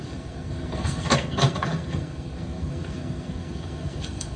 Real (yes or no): no